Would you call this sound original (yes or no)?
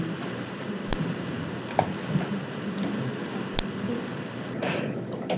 yes